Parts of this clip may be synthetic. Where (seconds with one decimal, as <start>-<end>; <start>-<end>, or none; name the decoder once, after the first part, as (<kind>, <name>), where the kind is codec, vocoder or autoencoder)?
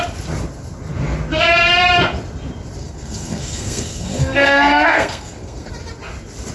2.8-5.7 (codec, SNAC)